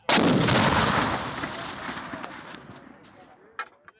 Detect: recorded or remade recorded